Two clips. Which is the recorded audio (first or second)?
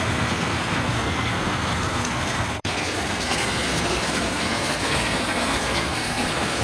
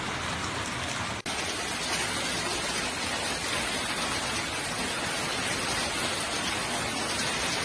second